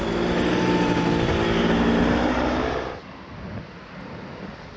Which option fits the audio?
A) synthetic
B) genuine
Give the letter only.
B